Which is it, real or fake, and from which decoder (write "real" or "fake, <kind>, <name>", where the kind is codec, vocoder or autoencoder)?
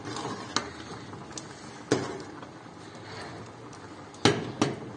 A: real